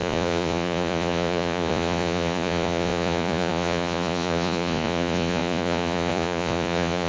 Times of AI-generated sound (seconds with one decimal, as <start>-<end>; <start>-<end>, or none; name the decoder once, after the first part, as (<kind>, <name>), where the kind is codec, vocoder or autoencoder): 0.0-7.1 (vocoder, Vocos)